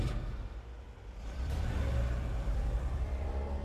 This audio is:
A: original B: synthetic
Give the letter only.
B